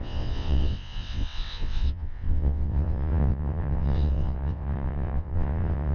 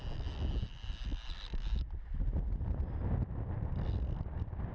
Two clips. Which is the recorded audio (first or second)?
second